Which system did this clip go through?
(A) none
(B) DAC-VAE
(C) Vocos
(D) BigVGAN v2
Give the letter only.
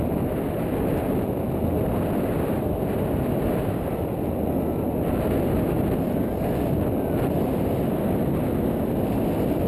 A